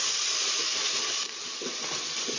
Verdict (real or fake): real